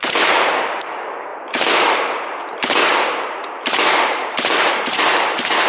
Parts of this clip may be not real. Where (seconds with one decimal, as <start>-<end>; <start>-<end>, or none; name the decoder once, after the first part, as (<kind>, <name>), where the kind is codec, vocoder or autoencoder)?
0.0-5.7 (vocoder, BigVGAN v2)